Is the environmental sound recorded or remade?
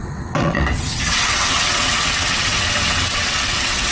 remade